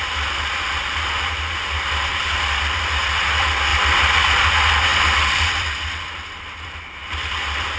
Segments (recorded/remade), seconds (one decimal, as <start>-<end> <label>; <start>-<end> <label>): 0.0-3.7 recorded; 3.7-4.4 remade; 4.4-4.9 recorded; 4.9-5.8 remade; 5.8-7.0 recorded; 7.0-7.8 remade